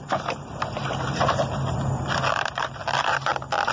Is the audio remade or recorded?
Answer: recorded